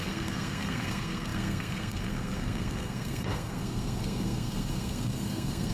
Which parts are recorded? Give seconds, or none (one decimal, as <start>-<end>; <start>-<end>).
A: none